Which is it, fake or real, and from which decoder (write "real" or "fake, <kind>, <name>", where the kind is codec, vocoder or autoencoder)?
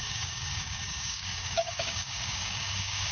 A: fake, codec, DAC